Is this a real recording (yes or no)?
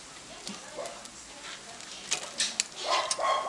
yes